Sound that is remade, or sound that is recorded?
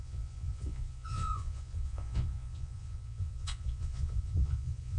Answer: remade